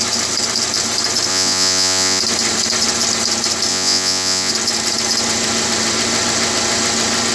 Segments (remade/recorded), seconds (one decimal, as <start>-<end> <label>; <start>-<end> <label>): 0.0-1.3 recorded; 1.3-2.2 remade; 2.2-3.7 recorded; 3.7-4.5 remade; 4.5-7.3 recorded